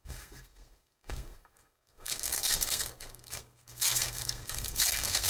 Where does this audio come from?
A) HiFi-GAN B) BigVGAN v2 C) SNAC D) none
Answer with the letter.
C